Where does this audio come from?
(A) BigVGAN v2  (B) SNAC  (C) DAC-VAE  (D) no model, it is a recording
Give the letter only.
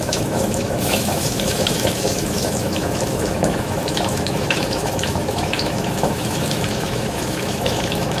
C